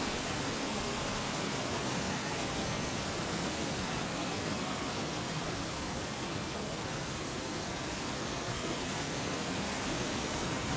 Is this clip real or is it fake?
fake